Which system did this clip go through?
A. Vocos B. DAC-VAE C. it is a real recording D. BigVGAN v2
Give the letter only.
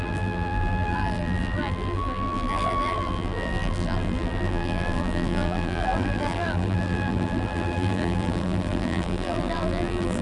D